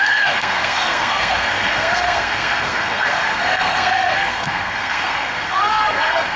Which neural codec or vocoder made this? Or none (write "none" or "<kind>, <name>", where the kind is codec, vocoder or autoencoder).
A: codec, SNAC